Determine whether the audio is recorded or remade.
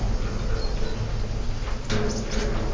recorded